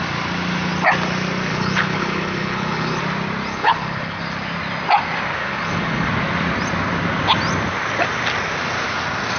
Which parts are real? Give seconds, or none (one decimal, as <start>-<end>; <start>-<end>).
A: 0.0-1.5; 3.0-3.5; 4.2-5.4; 6.1-9.4